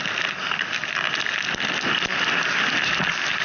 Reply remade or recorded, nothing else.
recorded